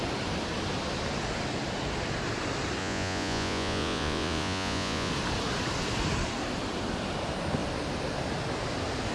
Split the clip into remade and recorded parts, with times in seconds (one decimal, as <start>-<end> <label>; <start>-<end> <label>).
0.0-2.8 recorded; 2.8-5.1 remade; 5.1-9.1 recorded